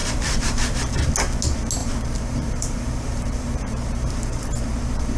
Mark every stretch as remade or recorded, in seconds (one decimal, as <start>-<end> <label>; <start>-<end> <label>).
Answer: 0.0-1.1 remade; 1.1-1.8 recorded; 1.8-5.2 remade